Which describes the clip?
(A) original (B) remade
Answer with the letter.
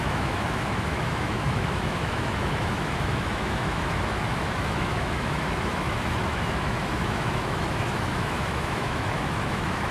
B